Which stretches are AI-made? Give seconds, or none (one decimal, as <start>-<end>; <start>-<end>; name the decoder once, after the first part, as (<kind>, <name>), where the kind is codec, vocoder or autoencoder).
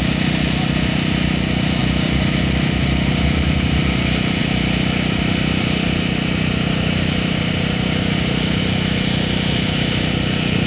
4.4-8.6 (vocoder, BigVGAN v2)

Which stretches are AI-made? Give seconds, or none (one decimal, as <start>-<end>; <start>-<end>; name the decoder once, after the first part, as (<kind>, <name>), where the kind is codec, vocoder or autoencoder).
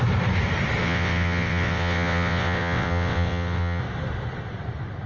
0.8-3.8 (vocoder, WaveNeXt)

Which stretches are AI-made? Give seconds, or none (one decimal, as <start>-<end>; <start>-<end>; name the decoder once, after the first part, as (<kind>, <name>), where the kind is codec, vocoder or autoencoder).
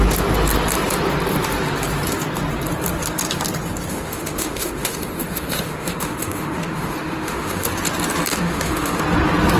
3.9-7.7 (autoencoder, DAC-VAE); 8.3-9.0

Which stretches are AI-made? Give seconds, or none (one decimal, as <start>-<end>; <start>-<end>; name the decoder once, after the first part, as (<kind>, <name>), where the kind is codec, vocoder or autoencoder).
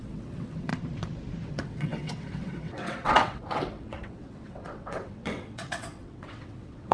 0.0-0.7 (vocoder, WaveNeXt); 1.5-6.9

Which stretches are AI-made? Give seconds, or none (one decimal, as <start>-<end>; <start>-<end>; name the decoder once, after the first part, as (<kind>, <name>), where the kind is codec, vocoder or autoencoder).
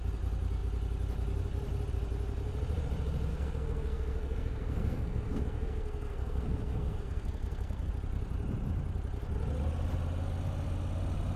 3.3-7.9 (codec, SNAC)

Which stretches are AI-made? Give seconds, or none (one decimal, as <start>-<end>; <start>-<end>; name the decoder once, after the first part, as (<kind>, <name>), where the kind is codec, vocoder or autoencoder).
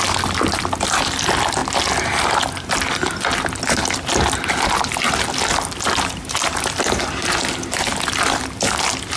none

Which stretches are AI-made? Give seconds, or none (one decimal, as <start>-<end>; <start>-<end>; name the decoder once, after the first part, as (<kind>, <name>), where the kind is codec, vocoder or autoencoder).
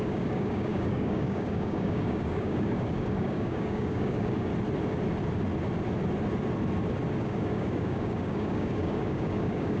0.0-4.5 (codec, DAC); 7.2-9.8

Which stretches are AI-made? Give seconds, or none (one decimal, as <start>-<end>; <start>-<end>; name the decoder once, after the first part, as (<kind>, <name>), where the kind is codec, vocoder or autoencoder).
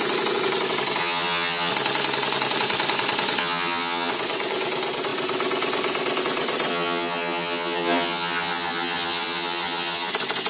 1.0-1.7 (vocoder, HiFi-GAN); 3.4-4.1; 6.7-10.1